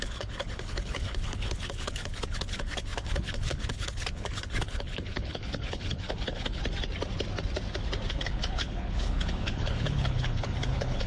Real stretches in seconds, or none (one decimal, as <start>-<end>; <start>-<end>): 6.6-8.1